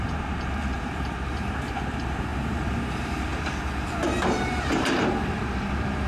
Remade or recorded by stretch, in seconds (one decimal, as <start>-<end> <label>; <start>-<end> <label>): 0.0-2.3 remade; 2.3-2.9 recorded; 2.9-6.1 remade